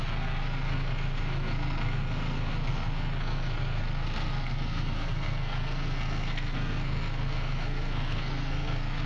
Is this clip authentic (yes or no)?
no